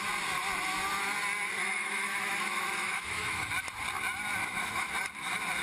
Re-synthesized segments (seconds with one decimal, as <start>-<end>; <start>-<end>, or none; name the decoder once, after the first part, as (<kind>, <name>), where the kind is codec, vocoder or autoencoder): 1.6-3.5 (autoencoder, DAC-VAE); 4.4-4.9